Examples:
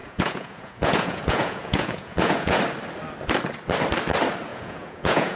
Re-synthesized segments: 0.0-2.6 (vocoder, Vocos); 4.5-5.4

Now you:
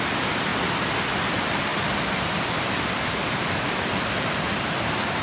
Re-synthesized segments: 0.0-0.5 (vocoder, BigVGAN v2); 1.1-5.2

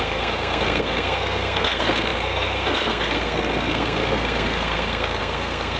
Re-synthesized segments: 0.0-5.8 (codec, SNAC)